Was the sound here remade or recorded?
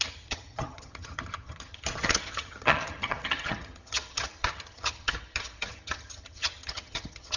remade